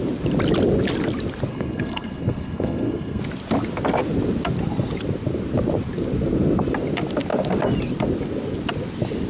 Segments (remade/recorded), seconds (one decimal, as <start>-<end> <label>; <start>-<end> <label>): 0.0-1.5 recorded; 1.5-3.2 remade; 3.2-9.3 recorded